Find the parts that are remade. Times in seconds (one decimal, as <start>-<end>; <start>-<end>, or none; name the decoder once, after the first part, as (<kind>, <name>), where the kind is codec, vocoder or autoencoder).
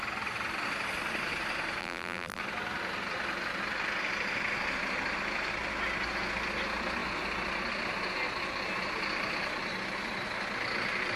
1.8-2.4 (vocoder, BigVGAN v2)